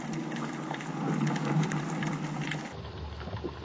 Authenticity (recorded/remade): recorded